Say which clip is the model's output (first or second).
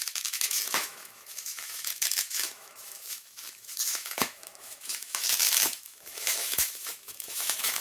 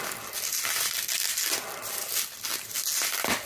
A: first